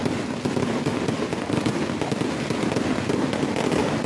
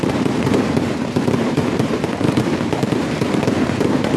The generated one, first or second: second